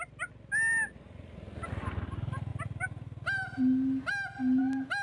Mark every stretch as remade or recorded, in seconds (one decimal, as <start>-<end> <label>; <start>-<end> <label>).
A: 0.0-2.5 recorded; 2.5-3.6 remade; 3.6-5.0 recorded